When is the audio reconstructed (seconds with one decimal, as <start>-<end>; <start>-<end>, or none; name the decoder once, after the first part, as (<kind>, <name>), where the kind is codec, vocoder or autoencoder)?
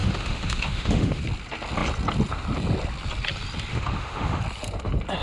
0.0-1.2 (autoencoder, DAC-VAE); 3.7-4.4